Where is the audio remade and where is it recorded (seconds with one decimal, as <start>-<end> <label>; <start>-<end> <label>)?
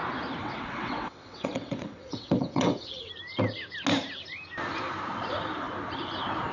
0.0-0.4 recorded; 0.4-3.1 remade; 3.1-6.5 recorded